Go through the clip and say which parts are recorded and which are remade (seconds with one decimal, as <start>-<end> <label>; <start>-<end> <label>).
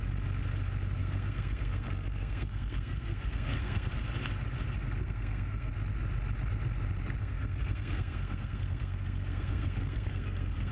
0.0-1.0 recorded; 1.0-3.9 remade; 3.9-5.0 recorded; 5.0-5.7 remade; 5.7-7.2 recorded; 7.2-10.7 remade